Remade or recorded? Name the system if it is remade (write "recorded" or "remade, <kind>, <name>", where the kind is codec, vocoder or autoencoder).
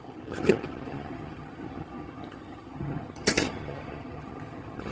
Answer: remade, vocoder, HiFi-GAN